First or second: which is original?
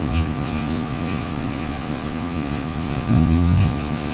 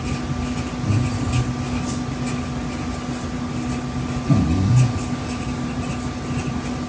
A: second